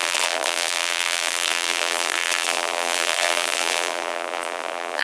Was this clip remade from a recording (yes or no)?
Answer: yes